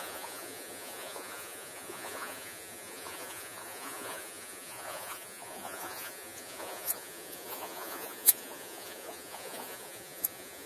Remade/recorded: remade